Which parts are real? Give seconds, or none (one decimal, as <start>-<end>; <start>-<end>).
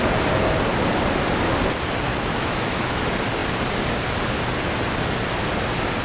0.0-2.1; 3.0-6.0